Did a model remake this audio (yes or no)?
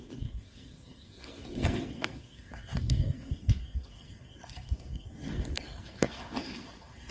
yes